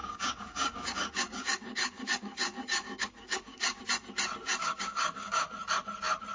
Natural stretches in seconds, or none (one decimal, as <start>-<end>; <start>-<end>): 3.8-4.6; 5.5-6.3